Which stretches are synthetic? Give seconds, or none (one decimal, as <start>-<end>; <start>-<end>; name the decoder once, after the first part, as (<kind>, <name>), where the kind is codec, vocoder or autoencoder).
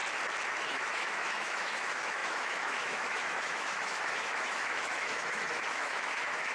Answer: 0.5-6.5 (autoencoder, DAC-VAE)